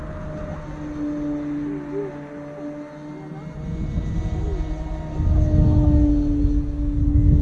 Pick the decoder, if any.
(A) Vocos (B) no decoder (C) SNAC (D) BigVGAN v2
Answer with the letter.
B